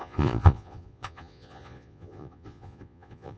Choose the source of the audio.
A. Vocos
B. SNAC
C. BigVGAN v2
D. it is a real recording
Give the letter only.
A